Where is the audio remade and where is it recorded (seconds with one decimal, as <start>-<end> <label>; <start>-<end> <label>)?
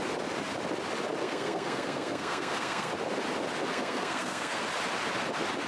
0.0-1.2 recorded; 1.2-2.9 remade; 2.9-3.7 recorded; 3.7-4.6 remade; 4.6-5.7 recorded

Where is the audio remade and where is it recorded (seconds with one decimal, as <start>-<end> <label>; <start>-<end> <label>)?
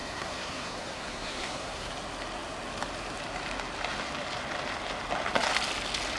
0.0-1.9 remade; 1.9-6.2 recorded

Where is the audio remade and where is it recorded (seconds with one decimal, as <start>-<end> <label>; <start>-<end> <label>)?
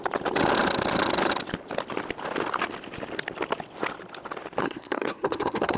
0.0-4.6 recorded; 4.6-5.8 remade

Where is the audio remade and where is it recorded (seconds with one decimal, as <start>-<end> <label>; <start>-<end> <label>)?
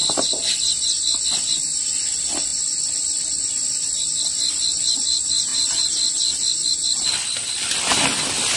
0.0-8.6 recorded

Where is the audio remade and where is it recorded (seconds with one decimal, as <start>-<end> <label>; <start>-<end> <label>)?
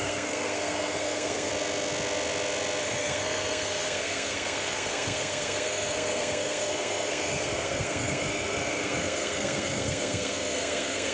0.0-1.5 remade; 1.5-2.8 recorded; 2.8-11.1 remade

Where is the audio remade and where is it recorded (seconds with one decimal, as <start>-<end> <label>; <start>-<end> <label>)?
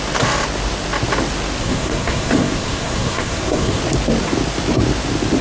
0.0-1.6 recorded; 1.6-3.8 remade; 3.8-5.4 recorded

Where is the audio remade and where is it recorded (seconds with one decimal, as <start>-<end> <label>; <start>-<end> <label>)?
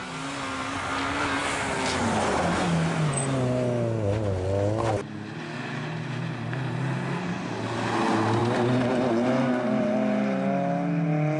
0.0-11.4 recorded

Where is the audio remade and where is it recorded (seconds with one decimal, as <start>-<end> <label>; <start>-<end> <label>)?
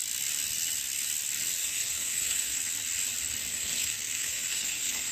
0.0-1.6 recorded; 1.6-2.6 remade; 2.6-3.5 recorded; 3.5-5.1 remade